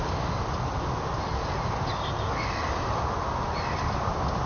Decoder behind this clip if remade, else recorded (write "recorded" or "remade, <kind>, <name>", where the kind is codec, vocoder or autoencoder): recorded